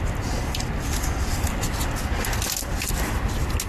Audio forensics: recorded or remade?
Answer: recorded